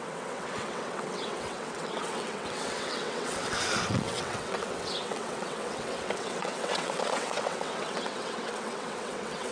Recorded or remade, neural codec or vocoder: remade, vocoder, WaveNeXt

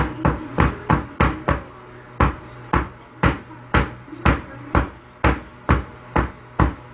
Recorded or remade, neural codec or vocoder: recorded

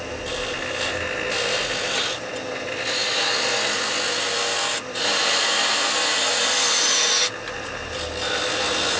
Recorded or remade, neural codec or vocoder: recorded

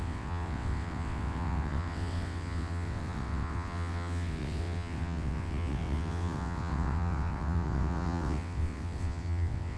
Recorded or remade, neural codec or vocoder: remade, vocoder, WaveNeXt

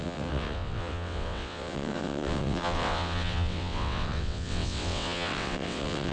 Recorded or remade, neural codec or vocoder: remade, vocoder, WaveNeXt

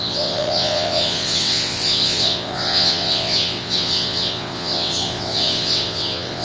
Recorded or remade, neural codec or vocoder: remade, vocoder, WaveNeXt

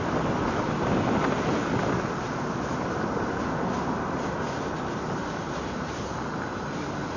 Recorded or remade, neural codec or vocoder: recorded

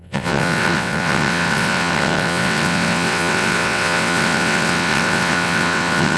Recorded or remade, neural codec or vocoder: remade, vocoder, WaveNeXt